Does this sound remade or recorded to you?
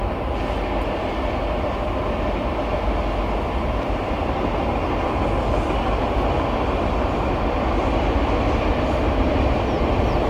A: recorded